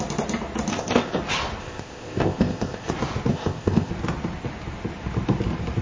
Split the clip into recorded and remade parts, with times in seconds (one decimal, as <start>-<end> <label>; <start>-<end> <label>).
0.0-0.7 recorded; 0.7-1.2 remade; 1.2-1.6 recorded; 1.6-2.9 remade; 2.9-3.3 recorded; 3.3-3.9 remade; 3.9-5.8 recorded

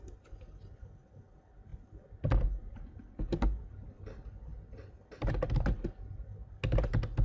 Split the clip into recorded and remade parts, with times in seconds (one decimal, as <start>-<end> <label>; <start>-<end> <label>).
0.0-7.2 recorded

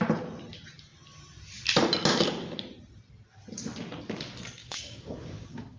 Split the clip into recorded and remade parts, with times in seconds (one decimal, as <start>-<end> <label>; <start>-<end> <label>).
0.0-4.6 recorded; 4.6-5.8 remade